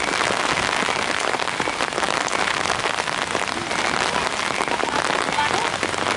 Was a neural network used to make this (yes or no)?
no